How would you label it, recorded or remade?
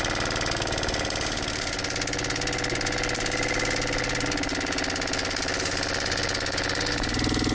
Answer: recorded